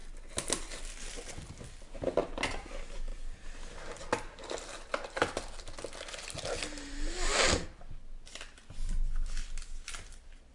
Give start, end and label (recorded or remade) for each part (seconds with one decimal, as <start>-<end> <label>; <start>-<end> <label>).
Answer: 0.0-10.5 recorded